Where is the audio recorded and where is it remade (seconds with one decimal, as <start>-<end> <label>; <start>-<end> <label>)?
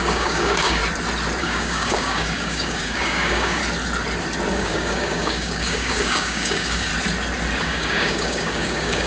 0.0-0.8 remade; 0.8-1.4 recorded; 1.4-3.6 remade; 3.6-4.5 recorded; 4.5-6.9 remade; 6.9-7.6 recorded; 7.6-9.1 remade